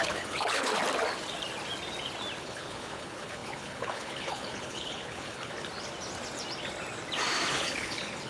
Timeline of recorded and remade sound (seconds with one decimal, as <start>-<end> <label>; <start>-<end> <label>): 0.0-0.8 remade; 0.8-2.4 recorded; 2.4-5.5 remade; 5.5-7.5 recorded; 7.5-8.3 remade